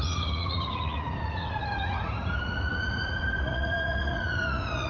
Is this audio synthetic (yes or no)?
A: yes